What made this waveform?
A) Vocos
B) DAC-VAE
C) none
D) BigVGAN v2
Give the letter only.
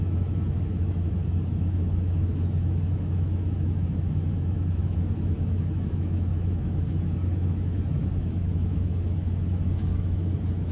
B